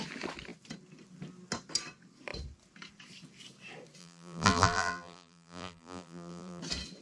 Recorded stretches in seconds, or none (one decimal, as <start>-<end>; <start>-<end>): 0.0-4.0; 6.6-7.0